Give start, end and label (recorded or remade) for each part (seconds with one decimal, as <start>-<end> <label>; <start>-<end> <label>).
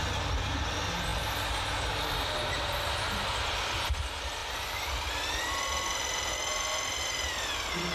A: 0.0-7.9 recorded